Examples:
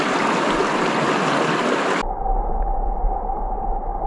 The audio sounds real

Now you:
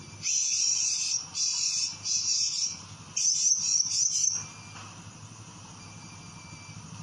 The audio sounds real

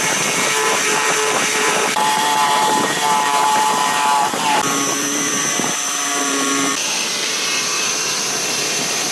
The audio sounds fake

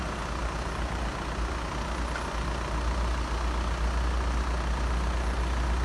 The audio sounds real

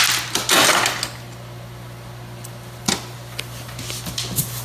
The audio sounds real